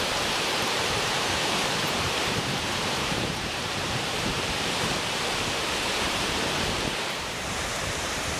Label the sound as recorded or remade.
remade